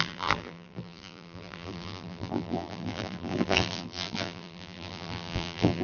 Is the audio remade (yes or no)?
yes